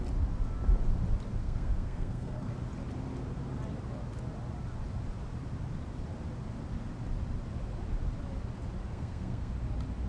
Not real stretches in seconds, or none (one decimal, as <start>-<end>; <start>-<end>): 1.4-2.5; 8.9-9.5